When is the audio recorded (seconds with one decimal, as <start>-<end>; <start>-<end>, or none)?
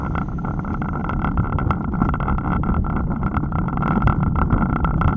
0.0-5.2